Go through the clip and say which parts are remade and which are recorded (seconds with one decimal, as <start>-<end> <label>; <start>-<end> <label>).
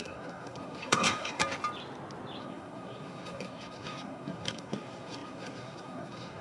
0.0-1.4 remade; 1.4-2.4 recorded; 2.4-6.4 remade